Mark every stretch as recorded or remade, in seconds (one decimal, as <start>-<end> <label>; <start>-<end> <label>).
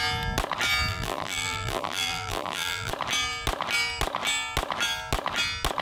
0.0-0.9 recorded; 0.9-2.9 remade; 2.9-5.8 recorded